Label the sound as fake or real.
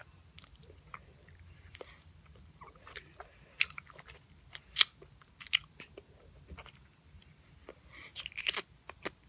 real